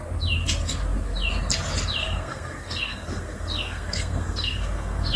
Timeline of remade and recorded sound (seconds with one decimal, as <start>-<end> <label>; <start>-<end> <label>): 0.0-2.0 recorded; 2.0-5.2 remade

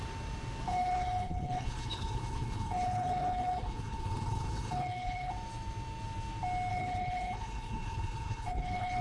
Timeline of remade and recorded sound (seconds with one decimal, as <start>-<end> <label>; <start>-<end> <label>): 0.0-0.7 recorded; 0.7-5.3 remade; 5.3-6.7 recorded; 6.7-9.0 remade

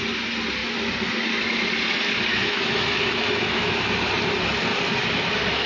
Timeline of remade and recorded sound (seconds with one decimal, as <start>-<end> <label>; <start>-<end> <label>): 0.0-2.3 recorded; 2.3-3.7 remade; 3.7-5.7 recorded

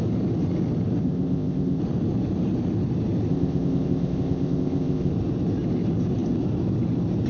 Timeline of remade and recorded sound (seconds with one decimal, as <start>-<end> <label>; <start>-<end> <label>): 0.0-1.0 recorded; 1.0-1.8 remade; 1.8-3.3 recorded; 3.3-5.1 remade; 5.1-7.3 recorded